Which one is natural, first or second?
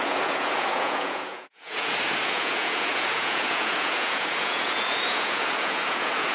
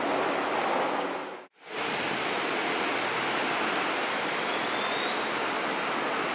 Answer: second